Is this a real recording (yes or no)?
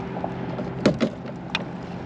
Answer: yes